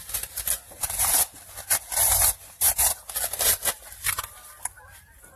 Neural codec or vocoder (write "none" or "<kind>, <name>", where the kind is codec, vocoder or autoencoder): none